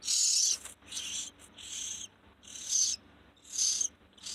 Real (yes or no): yes